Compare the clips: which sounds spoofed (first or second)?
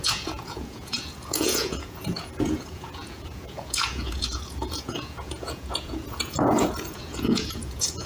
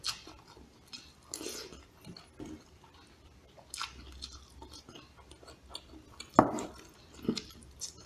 first